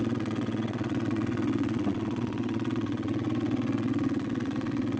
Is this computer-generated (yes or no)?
yes